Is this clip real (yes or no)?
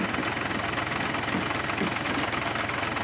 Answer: yes